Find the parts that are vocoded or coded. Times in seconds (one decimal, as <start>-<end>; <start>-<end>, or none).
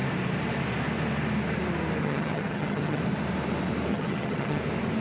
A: 2.0-3.0; 3.9-4.6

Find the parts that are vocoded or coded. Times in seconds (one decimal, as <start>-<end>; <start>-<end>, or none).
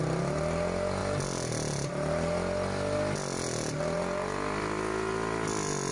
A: none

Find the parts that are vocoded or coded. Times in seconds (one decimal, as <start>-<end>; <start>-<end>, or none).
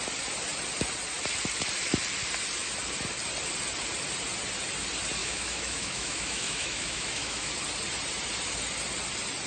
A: 5.2-7.5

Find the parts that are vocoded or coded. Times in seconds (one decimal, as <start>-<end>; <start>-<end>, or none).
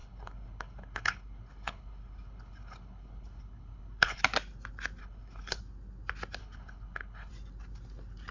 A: 0.0-4.2; 5.0-5.6; 6.4-7.3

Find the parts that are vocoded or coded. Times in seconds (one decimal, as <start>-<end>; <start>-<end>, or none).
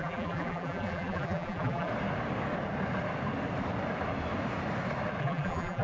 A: 0.0-1.9; 5.2-5.8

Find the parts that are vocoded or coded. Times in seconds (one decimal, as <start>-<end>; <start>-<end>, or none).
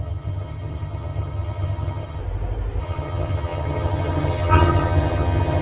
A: 0.0-2.2; 2.8-5.6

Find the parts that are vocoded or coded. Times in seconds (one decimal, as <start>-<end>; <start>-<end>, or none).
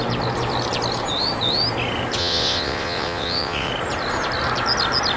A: 2.2-3.7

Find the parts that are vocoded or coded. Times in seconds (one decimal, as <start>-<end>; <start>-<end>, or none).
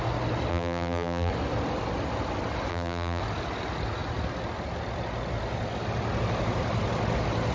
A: 0.5-1.3; 2.7-3.2